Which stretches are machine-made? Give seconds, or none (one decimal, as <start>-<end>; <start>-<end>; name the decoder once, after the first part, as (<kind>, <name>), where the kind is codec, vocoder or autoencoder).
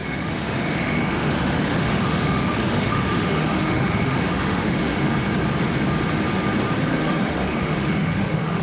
0.0-5.1 (autoencoder, DAC-VAE); 6.9-8.6